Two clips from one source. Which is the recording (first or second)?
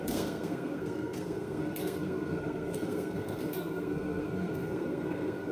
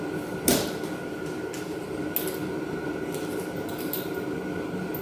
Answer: second